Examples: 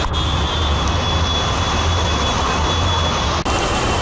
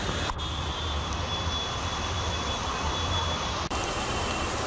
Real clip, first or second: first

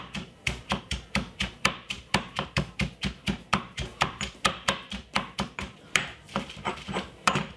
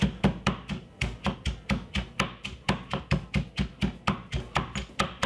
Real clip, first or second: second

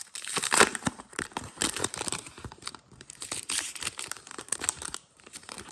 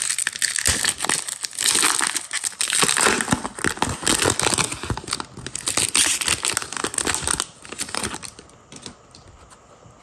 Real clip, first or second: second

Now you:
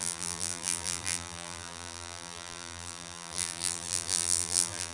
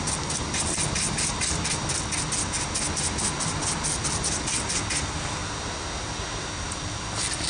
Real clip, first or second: second